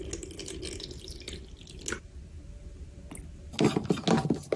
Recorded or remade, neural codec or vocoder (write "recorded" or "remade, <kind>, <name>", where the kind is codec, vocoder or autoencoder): recorded